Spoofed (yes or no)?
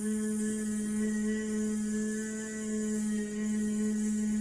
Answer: no